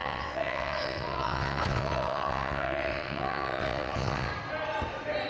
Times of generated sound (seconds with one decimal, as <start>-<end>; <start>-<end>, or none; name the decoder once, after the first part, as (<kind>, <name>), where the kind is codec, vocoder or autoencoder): 0.0-4.3 (vocoder, WaveNeXt)